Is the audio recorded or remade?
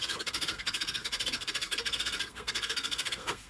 remade